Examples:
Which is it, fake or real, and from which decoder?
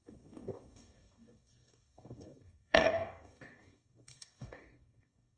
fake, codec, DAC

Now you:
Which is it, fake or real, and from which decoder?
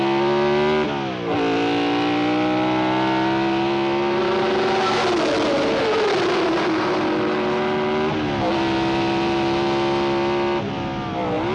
real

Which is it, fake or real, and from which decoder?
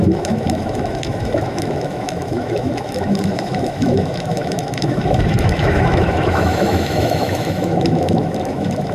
fake, autoencoder, DAC-VAE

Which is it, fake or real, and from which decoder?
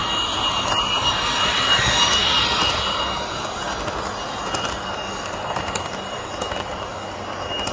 real